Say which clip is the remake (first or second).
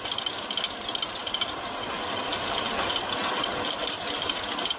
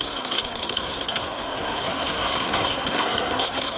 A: second